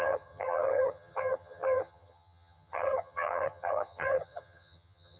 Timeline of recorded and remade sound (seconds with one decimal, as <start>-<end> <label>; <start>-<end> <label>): 0.0-5.2 remade